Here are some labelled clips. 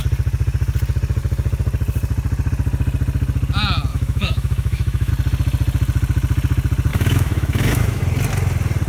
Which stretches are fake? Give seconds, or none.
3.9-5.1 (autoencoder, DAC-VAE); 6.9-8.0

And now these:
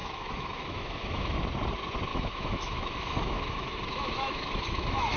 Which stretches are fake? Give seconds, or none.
0.0-1.4 (autoencoder, DAC-VAE); 2.1-5.2

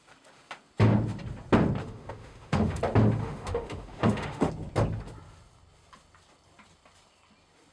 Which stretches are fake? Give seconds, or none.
1.8-2.8 (autoencoder, DAC-VAE); 3.2-4.5

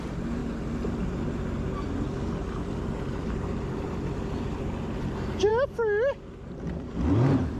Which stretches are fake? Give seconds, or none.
none

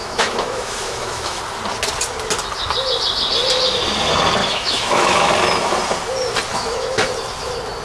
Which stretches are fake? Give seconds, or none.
0.0-1.4 (autoencoder, DAC-VAE); 4.4-5.3; 6.5-7.1

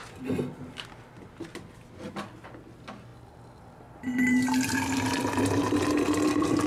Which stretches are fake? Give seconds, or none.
none

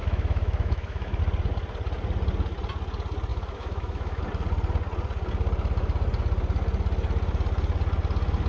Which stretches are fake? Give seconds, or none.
0.0-1.2 (autoencoder, DAC-VAE); 3.3-4.2